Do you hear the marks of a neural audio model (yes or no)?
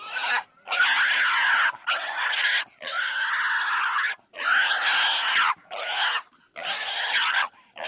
no